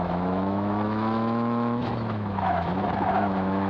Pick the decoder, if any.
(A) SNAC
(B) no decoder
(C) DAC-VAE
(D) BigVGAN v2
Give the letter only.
C